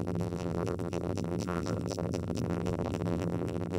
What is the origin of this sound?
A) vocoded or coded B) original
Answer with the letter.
A